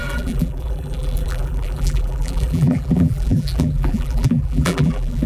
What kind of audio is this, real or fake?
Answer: fake